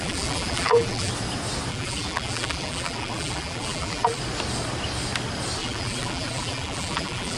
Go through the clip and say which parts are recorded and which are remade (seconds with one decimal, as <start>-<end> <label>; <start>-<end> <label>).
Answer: 0.0-1.1 remade; 1.1-1.7 recorded; 1.7-4.2 remade; 4.2-5.6 recorded; 5.6-7.4 remade